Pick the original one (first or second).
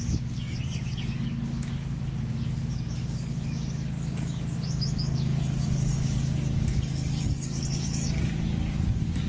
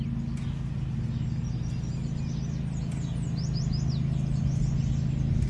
second